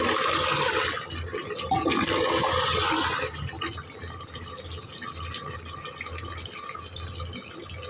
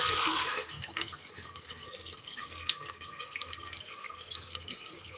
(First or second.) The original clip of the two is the first